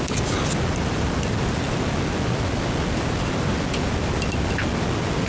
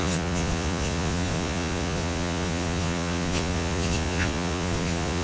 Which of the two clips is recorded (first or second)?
first